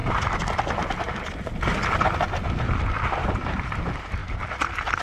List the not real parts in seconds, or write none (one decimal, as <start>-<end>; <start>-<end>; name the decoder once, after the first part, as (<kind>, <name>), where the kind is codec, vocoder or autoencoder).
3.0-4.2 (vocoder, BigVGAN v2)